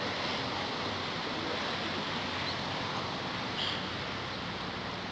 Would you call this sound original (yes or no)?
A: yes